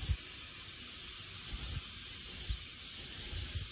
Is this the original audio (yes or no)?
yes